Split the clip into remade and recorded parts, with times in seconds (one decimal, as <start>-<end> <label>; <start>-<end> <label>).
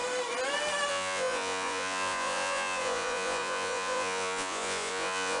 0.0-0.9 recorded; 0.9-5.4 remade